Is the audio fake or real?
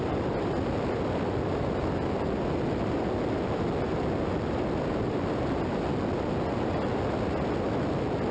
real